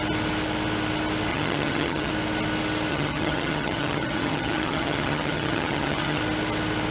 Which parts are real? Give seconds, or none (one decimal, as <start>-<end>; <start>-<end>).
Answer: 0.0-1.3; 2.1-2.9; 6.2-6.9